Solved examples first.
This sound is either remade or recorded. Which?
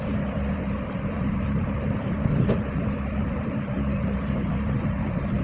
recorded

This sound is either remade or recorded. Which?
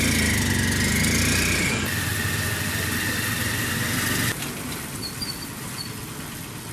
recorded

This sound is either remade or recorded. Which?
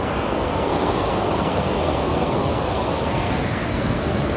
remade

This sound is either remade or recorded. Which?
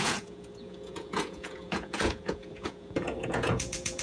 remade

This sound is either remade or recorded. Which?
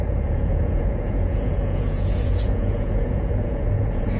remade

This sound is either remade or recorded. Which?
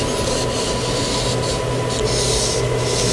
recorded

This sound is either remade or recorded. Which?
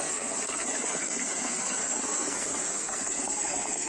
remade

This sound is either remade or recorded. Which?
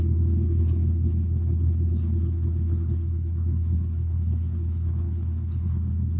remade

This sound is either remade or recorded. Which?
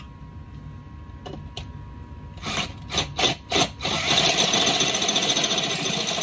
recorded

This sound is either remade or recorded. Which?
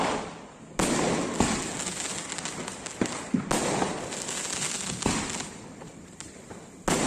recorded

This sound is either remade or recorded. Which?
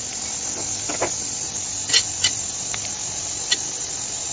recorded